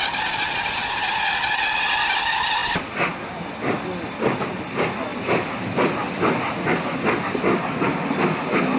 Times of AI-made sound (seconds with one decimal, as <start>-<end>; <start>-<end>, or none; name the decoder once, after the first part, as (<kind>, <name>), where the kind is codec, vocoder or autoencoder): 5.1-6.8 (vocoder, BigVGAN v2)